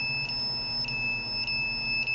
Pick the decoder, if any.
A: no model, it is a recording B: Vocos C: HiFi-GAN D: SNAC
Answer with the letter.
A